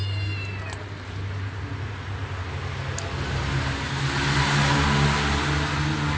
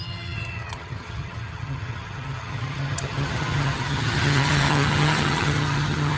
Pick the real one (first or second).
first